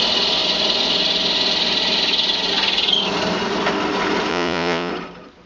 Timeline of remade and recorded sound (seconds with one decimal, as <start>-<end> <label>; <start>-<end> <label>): 0.0-4.3 recorded; 4.3-4.9 remade; 4.9-5.5 recorded